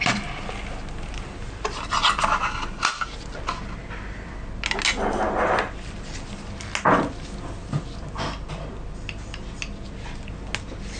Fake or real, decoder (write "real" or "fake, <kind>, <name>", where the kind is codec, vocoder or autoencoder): real